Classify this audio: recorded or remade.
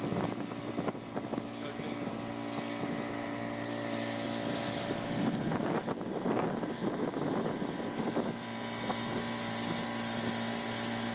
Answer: recorded